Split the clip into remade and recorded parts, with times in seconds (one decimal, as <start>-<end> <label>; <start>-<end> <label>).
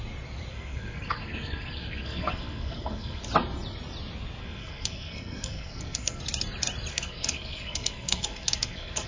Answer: 0.0-0.5 recorded; 0.5-3.2 remade; 3.2-4.4 recorded; 4.4-6.2 remade; 6.2-6.9 recorded; 6.9-9.1 remade